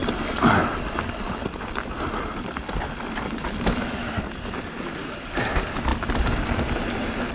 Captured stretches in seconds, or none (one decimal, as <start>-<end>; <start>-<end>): 0.0-7.3